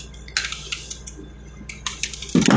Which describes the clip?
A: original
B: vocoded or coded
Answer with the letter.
A